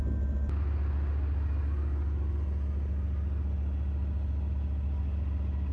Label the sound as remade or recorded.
recorded